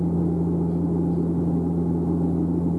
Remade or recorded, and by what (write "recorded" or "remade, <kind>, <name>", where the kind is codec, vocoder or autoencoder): recorded